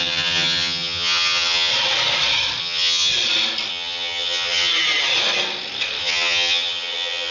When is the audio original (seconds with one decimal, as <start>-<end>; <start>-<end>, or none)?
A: 1.7-2.6; 3.1-3.7; 4.7-6.0